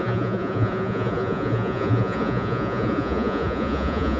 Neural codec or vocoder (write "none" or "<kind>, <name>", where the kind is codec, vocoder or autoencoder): vocoder, Vocos